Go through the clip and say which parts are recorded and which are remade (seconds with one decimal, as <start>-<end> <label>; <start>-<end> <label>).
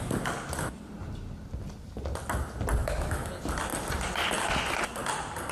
0.0-2.8 recorded; 2.8-3.3 remade; 3.3-5.5 recorded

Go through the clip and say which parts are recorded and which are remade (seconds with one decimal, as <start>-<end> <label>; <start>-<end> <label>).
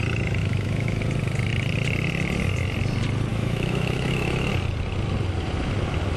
0.0-0.4 recorded; 0.4-1.0 remade; 1.0-3.3 recorded; 3.3-4.5 remade; 4.5-6.2 recorded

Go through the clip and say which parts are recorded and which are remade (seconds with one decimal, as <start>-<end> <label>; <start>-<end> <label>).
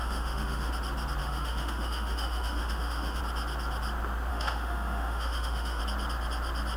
0.0-0.7 remade; 0.7-1.2 recorded; 1.2-3.2 remade; 3.2-4.3 recorded; 4.3-5.8 remade; 5.8-6.8 recorded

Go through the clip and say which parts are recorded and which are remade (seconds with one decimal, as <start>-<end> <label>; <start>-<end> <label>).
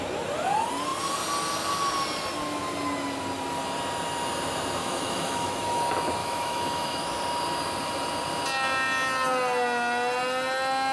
0.0-4.8 recorded; 4.8-5.8 remade; 5.8-6.2 recorded; 6.2-7.1 remade; 7.1-10.9 recorded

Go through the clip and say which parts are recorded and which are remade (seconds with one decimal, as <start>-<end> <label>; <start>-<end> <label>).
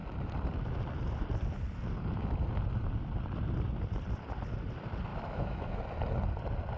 0.0-5.1 recorded; 5.1-5.8 remade; 5.8-6.8 recorded